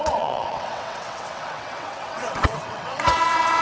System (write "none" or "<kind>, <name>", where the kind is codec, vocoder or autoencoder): vocoder, WaveNeXt